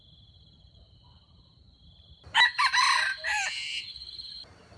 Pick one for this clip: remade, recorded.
remade